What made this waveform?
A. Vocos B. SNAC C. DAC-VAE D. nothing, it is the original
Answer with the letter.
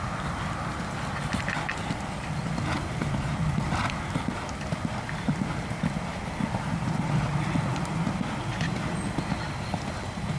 D